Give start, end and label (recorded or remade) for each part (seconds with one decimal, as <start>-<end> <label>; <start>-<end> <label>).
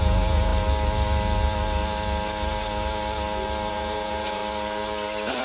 0.0-0.5 remade; 0.5-3.7 recorded; 3.7-4.4 remade; 4.4-5.4 recorded